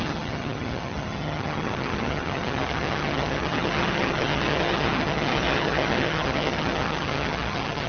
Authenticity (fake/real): fake